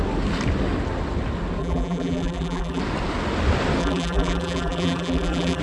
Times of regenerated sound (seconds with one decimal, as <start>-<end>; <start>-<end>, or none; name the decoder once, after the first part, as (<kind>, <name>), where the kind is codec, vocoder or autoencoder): 1.6-2.8 (vocoder, BigVGAN v2); 3.8-5.6